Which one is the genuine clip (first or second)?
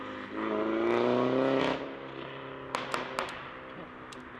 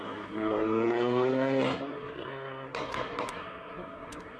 first